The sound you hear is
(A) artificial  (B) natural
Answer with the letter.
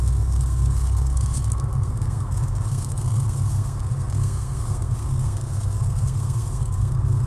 A